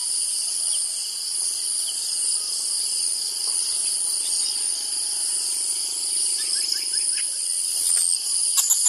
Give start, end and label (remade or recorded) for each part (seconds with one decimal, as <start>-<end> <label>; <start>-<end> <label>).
0.0-8.9 recorded